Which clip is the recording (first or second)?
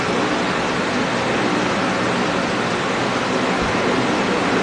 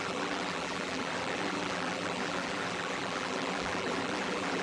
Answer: first